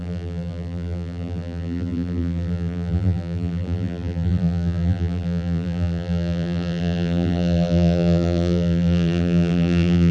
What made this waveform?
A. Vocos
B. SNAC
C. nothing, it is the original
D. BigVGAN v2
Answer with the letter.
D